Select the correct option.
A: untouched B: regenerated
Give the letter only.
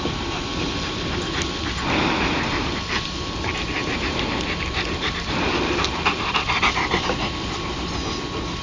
A